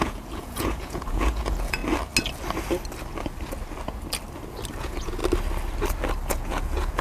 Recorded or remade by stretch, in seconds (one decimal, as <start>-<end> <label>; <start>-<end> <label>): 0.0-1.8 remade; 1.8-4.8 recorded; 4.8-5.2 remade; 5.2-6.3 recorded; 6.3-7.0 remade